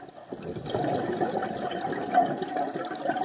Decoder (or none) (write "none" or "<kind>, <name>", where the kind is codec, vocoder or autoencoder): none